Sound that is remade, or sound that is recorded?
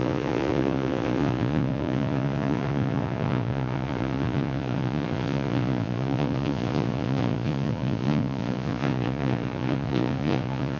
remade